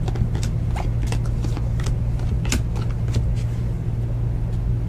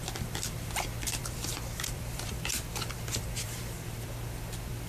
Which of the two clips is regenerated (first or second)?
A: second